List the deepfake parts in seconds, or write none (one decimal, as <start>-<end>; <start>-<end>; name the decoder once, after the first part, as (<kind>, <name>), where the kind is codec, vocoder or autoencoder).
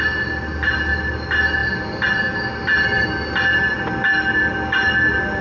none